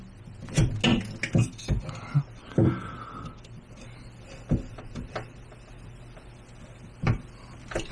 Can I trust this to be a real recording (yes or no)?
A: yes